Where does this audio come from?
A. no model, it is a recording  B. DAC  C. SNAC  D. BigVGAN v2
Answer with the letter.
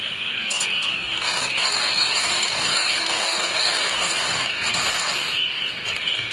B